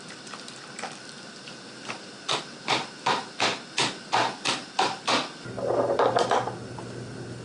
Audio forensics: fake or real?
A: fake